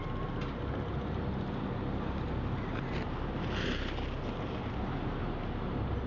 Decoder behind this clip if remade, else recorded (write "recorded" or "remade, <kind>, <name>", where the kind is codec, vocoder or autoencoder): recorded